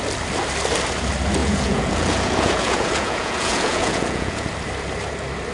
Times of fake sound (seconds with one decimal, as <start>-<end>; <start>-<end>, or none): 1.4-4.5